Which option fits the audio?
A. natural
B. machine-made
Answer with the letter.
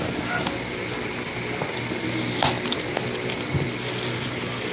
A